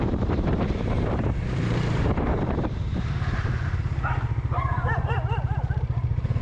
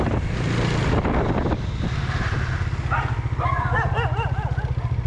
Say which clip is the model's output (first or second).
first